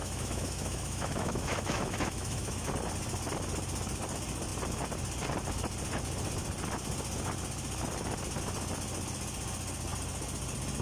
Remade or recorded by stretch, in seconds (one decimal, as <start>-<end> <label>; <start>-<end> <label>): 0.0-2.7 remade; 2.7-10.8 recorded